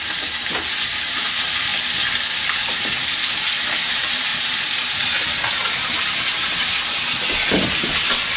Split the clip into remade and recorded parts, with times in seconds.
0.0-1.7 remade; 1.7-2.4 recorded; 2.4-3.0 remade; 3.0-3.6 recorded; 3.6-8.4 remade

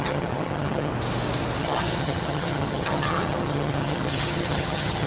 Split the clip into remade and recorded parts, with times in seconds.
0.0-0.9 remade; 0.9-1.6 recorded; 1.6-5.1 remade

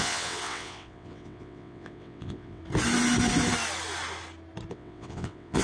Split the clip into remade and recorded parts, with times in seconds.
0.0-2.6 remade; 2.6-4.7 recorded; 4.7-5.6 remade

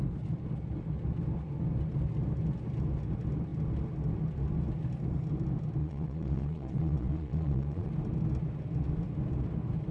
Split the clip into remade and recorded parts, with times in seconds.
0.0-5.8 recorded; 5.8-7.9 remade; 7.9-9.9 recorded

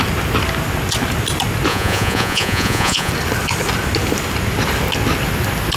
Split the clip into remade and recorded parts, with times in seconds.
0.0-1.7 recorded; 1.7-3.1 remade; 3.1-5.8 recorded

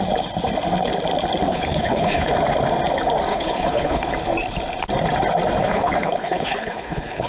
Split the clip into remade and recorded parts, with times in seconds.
0.0-1.5 recorded; 1.5-2.3 remade; 2.3-3.3 recorded; 3.3-4.1 remade; 4.1-5.6 recorded; 5.6-7.3 remade

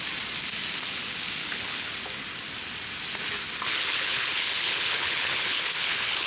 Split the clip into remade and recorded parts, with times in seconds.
0.0-1.4 recorded; 1.4-1.9 remade; 1.9-3.7 recorded; 3.7-6.3 remade